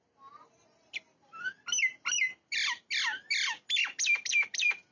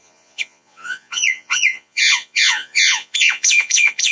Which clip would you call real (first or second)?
first